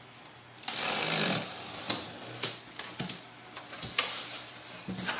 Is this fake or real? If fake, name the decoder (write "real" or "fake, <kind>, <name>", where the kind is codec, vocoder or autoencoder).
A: real